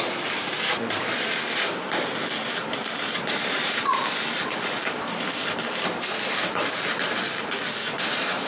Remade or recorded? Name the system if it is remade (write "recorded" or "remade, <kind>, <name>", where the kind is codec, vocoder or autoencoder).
remade, vocoder, BigVGAN v2